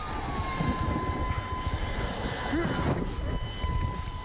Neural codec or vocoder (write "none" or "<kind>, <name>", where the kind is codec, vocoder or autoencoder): none